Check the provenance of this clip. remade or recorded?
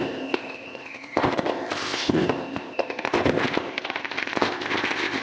remade